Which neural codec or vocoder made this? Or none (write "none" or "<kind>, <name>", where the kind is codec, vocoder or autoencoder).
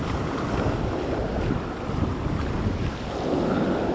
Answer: none